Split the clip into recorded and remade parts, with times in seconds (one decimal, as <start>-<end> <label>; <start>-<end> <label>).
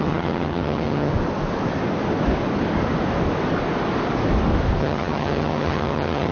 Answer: 0.0-1.1 remade; 1.1-4.8 recorded; 4.8-6.3 remade